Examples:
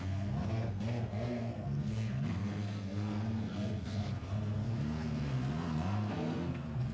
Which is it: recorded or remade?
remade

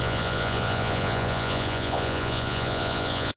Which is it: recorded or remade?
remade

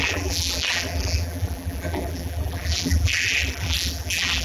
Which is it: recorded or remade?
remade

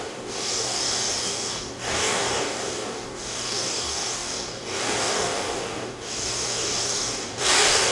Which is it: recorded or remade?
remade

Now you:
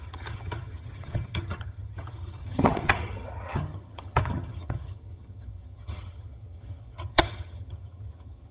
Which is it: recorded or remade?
remade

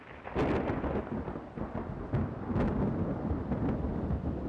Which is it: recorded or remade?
recorded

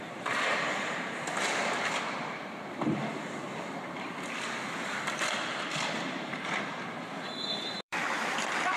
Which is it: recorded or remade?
remade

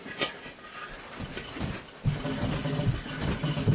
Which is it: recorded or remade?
recorded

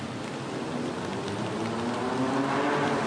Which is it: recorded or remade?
recorded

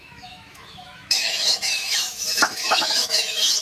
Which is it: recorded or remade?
remade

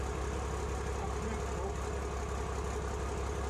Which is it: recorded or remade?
recorded